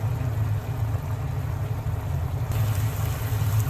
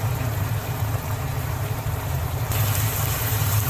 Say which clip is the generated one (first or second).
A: second